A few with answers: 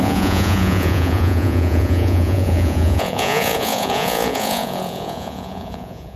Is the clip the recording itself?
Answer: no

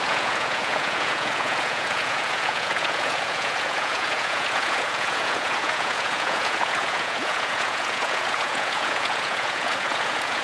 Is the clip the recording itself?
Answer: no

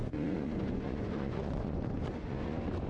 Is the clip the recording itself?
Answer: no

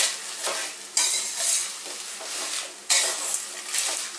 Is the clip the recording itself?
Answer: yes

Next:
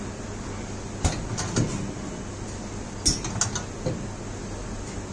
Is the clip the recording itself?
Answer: yes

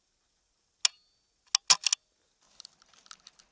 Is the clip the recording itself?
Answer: yes